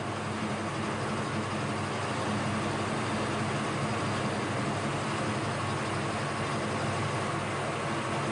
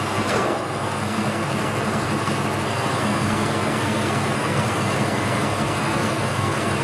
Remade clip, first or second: second